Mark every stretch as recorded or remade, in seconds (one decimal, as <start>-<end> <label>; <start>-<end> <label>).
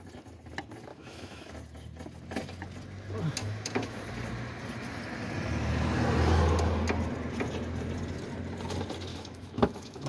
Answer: 0.0-0.9 recorded; 0.9-1.5 remade; 1.5-3.4 recorded; 3.4-4.0 remade; 4.0-9.1 recorded; 9.1-10.1 remade